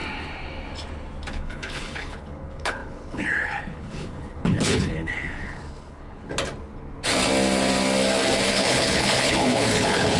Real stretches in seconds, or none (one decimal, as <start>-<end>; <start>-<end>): 0.0-1.3; 6.3-8.5